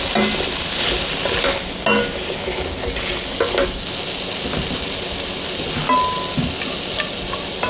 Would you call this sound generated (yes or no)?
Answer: no